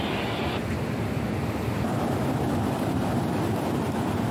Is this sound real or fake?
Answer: fake